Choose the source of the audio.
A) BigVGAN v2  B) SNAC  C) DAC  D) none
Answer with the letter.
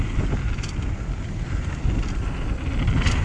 D